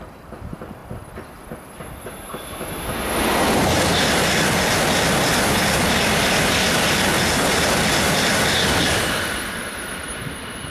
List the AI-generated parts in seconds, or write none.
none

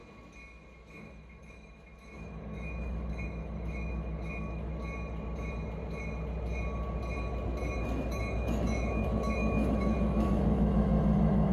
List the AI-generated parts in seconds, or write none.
0.8-4.7 (autoencoder, DAC-VAE); 7.8-11.5